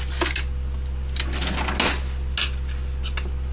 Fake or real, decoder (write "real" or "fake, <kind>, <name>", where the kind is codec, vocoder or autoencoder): real